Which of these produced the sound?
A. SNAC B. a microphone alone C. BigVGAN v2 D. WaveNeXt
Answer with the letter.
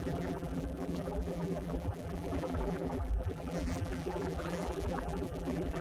C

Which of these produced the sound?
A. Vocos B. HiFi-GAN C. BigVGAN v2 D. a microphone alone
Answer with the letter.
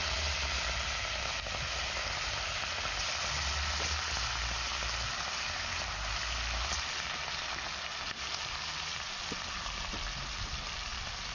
D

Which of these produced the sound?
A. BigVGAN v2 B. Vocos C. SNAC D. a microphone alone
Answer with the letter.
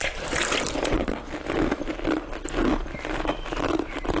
D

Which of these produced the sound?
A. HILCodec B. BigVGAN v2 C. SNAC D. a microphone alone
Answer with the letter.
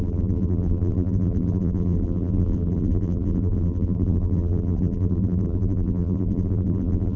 B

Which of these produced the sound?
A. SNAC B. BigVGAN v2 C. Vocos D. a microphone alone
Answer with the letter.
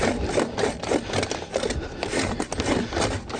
D